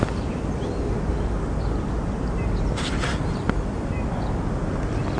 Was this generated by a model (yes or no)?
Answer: no